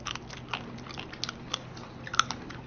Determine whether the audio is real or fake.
real